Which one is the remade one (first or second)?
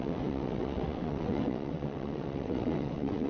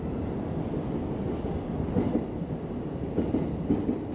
first